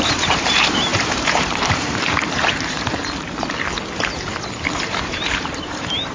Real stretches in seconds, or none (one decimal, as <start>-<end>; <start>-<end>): 3.0-4.9